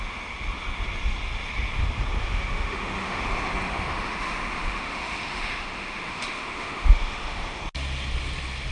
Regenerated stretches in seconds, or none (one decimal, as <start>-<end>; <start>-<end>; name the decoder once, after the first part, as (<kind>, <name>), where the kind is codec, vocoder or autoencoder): 2.2-3.2 (autoencoder, DAC-VAE); 3.7-7.6

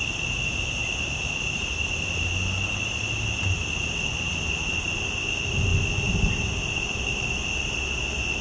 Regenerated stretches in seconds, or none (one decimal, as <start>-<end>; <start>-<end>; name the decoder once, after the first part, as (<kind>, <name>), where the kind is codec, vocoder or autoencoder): none

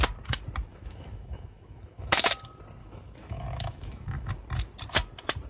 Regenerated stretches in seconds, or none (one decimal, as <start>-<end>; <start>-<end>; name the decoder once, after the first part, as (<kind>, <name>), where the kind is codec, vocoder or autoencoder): 0.7-2.3 (autoencoder, DAC-VAE); 2.8-4.3